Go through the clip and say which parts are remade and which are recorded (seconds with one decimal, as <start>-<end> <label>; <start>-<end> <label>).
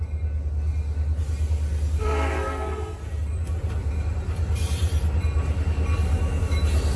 0.0-2.0 recorded; 2.0-3.0 remade; 3.0-7.0 recorded